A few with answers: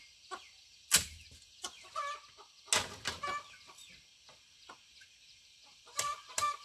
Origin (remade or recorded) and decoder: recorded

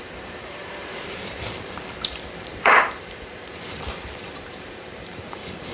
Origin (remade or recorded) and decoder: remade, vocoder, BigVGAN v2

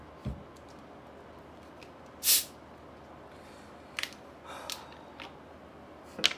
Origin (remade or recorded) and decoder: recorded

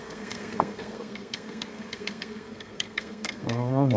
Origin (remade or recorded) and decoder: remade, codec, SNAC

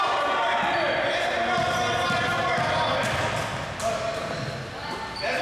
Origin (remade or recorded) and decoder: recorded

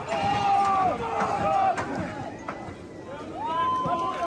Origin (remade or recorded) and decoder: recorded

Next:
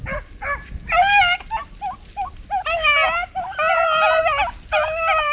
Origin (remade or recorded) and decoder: recorded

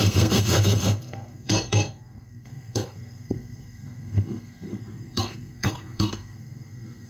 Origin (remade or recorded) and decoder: remade, codec, SNAC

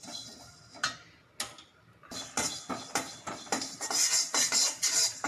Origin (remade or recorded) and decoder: recorded